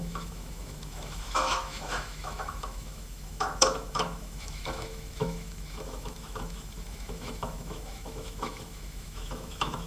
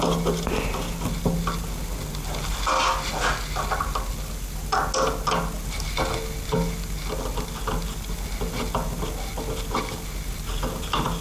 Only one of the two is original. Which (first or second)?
second